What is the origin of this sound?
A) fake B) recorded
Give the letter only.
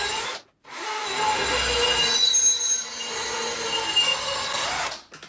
B